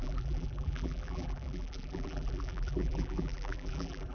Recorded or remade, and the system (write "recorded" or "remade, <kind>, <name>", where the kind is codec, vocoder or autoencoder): remade, vocoder, BigVGAN v2